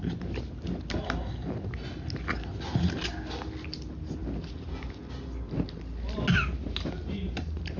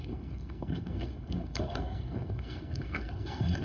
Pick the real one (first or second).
first